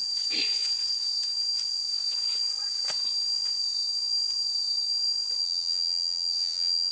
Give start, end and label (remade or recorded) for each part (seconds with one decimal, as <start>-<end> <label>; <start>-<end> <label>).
0.0-5.4 recorded; 5.4-6.9 remade